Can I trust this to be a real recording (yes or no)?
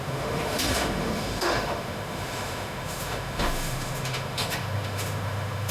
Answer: no